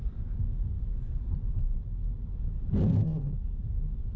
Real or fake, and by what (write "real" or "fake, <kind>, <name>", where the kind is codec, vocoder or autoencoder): real